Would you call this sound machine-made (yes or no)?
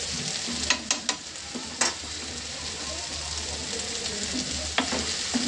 no